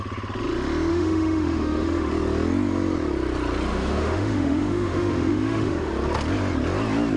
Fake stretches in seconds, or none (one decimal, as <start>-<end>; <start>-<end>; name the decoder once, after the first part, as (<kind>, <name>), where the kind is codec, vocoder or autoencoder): 0.9-2.1 (autoencoder, DAC-VAE); 3.7-5.9